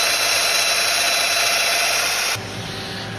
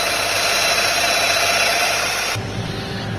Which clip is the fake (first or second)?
second